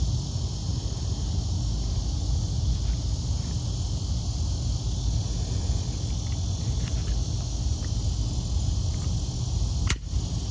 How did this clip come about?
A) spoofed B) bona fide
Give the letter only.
B